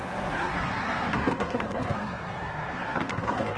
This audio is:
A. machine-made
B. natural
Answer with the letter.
A